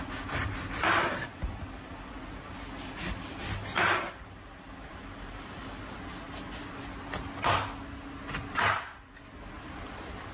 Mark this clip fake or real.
real